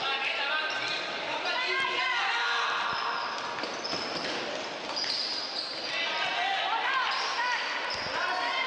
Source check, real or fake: real